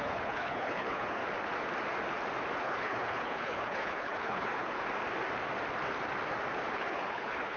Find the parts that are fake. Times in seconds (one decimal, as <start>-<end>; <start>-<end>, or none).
0.0-1.2; 2.6-4.8; 6.7-7.6